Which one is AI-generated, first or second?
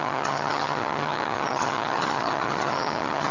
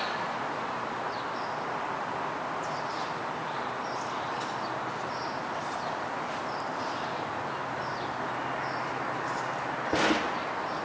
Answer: first